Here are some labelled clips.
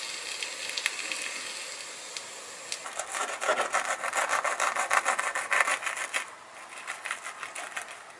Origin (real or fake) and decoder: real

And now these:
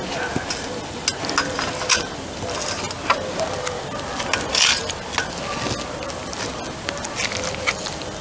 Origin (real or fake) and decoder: real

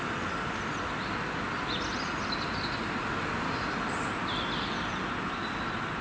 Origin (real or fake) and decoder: real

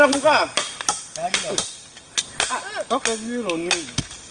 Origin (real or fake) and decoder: real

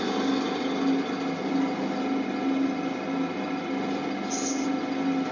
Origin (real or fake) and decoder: real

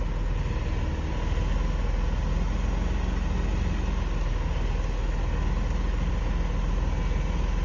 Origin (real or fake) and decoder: real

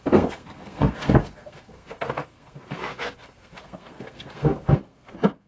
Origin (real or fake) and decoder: fake, codec, SNAC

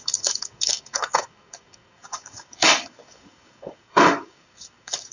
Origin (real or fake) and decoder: fake, codec, DAC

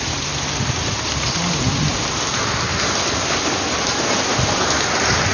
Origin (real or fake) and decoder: real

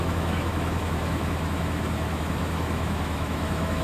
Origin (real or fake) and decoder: fake, autoencoder, DAC-VAE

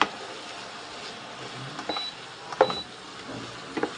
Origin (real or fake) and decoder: real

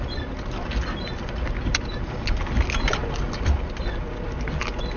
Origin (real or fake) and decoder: real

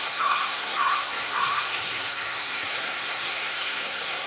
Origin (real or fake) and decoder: fake, codec, SNAC